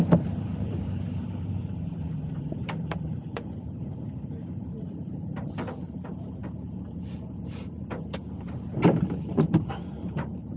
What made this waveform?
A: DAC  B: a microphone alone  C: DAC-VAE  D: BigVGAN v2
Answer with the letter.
D